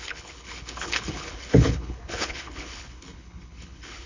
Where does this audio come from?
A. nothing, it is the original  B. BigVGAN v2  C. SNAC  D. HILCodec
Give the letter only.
D